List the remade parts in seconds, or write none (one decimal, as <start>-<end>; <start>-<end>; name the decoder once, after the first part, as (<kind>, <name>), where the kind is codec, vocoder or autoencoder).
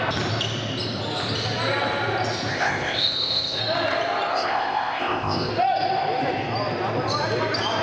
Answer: 2.5-3.6 (codec, ZipCodec); 4.3-5.5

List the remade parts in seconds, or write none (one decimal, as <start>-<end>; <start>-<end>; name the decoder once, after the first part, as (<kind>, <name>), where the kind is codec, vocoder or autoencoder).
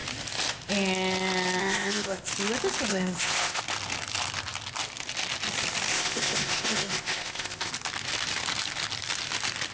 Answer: 1.6-2.3 (codec, ZipCodec); 2.9-3.6; 5.9-7.7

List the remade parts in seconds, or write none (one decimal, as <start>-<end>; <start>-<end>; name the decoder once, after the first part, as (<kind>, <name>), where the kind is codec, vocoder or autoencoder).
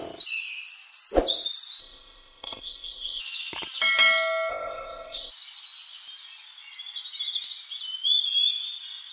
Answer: 1.8-3.2 (codec, ZipCodec); 4.5-5.3